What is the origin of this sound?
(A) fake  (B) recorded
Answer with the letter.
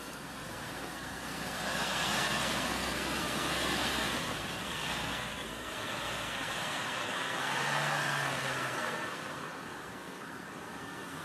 A